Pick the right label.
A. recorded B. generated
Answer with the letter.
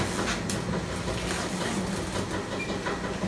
A